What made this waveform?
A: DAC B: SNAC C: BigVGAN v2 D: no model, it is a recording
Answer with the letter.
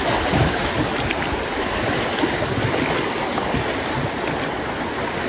D